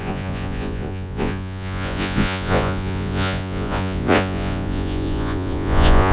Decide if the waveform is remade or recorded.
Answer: remade